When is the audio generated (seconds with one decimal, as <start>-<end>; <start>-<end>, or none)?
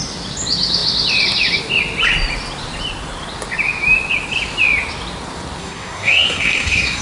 5.6-7.0